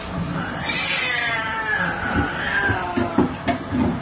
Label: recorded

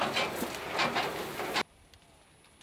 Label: recorded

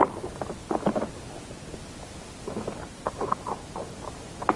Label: recorded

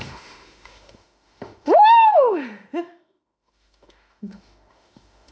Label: remade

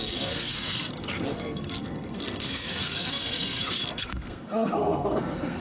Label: remade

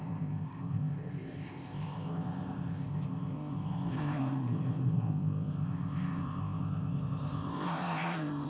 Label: remade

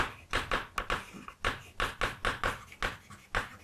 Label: recorded